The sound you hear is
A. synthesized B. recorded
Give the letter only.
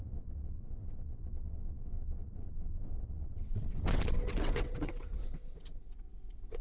A